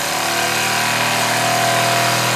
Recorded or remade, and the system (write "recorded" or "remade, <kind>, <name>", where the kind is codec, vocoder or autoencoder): recorded